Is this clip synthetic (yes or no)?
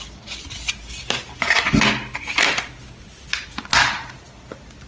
no